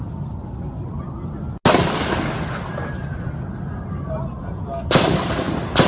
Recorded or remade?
recorded